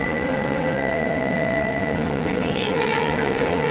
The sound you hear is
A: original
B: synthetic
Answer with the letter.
B